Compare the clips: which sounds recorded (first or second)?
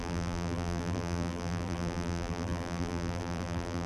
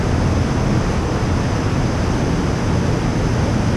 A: second